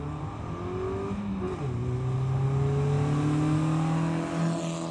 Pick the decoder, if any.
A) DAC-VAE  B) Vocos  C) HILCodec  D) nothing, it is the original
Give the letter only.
D